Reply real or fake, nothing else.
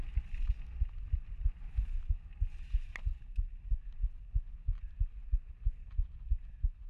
real